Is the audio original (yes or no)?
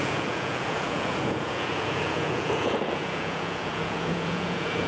no